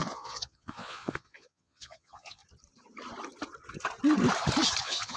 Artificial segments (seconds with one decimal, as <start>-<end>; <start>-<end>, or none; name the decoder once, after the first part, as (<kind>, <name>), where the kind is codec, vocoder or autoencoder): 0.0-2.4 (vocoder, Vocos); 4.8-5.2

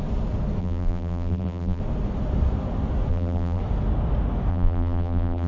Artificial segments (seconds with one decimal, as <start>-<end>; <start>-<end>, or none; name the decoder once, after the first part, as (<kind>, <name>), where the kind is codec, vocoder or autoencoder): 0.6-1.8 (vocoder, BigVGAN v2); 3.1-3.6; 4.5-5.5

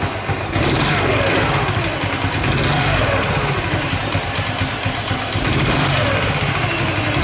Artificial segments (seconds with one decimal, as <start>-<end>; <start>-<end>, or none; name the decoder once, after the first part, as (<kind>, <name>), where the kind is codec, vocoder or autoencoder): 3.0-5.9 (vocoder, BigVGAN v2)

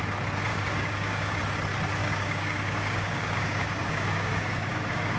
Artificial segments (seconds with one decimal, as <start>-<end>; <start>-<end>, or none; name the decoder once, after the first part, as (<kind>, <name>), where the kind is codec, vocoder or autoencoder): 0.5-1.4 (codec, DAC); 2.0-5.2

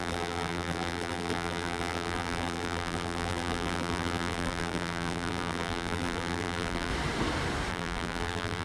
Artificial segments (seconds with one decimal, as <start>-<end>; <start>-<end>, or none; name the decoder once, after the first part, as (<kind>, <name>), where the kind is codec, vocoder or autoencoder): 0.0-6.9 (vocoder, BigVGAN v2); 7.7-8.6

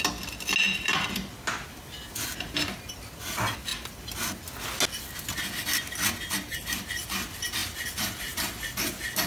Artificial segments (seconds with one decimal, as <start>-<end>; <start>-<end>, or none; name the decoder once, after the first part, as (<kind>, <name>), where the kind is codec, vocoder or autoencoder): none